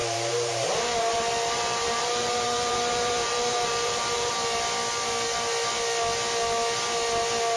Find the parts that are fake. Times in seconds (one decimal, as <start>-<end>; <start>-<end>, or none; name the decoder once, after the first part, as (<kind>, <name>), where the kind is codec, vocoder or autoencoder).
0.0-4.3 (vocoder, BigVGAN v2)